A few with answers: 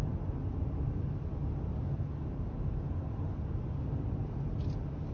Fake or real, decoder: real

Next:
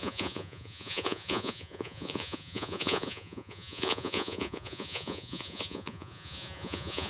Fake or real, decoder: fake, vocoder, Vocos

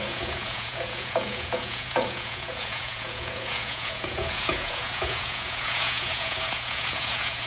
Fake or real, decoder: fake, vocoder, Vocos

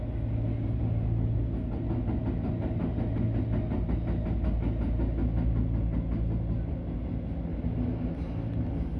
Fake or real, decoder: real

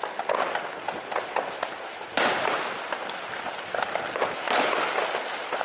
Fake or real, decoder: real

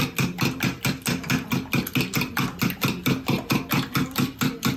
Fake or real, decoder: real